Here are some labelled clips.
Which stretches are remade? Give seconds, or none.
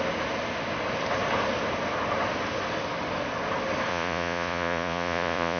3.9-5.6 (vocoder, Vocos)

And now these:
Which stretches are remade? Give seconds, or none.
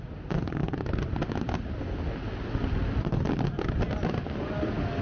none